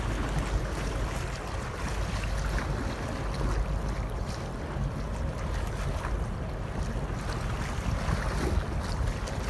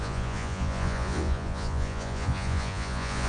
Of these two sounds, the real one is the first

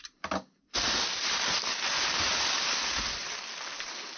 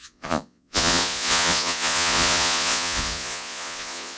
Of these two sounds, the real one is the first